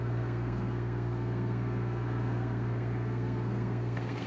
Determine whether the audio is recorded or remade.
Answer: remade